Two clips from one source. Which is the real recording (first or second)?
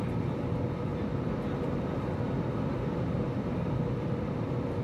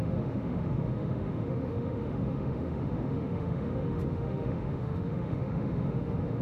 first